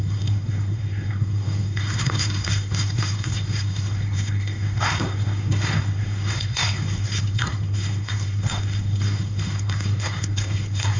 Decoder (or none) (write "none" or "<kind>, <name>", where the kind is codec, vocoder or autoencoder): codec, SNAC